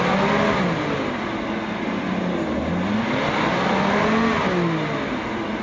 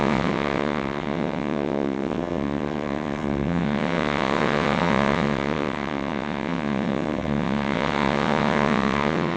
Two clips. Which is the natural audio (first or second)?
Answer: first